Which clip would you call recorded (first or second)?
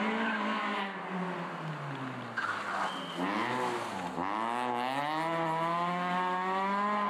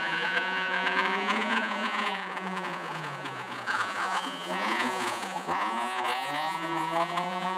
first